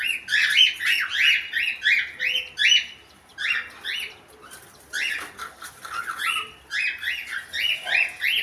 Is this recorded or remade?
recorded